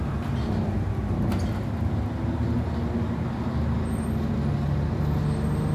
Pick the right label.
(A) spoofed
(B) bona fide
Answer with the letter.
B